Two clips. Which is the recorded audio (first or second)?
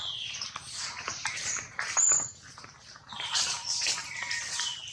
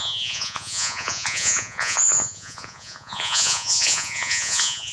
first